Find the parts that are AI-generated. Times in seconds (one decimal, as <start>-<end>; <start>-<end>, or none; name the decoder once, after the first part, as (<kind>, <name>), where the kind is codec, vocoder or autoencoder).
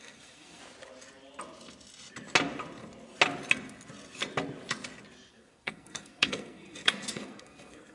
0.0-0.6 (codec, SNAC); 5.3-7.9